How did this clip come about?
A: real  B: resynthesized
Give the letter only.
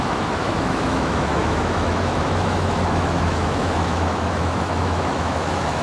B